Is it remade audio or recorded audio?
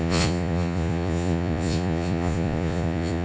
remade